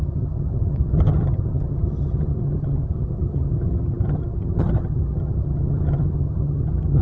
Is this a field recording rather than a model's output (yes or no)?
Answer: no